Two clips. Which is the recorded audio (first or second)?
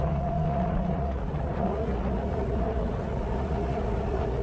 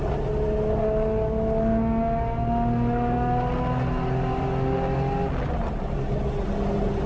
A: second